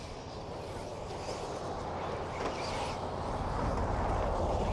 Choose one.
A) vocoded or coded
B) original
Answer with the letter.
B